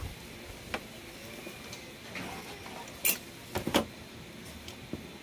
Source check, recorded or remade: recorded